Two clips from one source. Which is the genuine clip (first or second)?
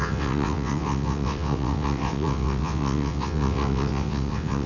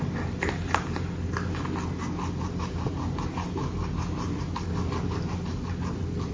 second